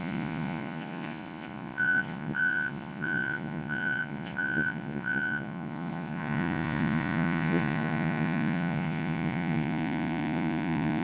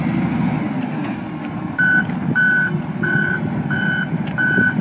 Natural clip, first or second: second